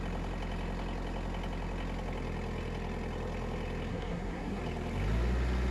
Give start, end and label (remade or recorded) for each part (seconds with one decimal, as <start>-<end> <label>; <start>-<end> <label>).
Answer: 0.0-3.9 recorded; 3.9-4.6 remade; 4.6-5.7 recorded